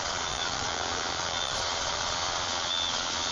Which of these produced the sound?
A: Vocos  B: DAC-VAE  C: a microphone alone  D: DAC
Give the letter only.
A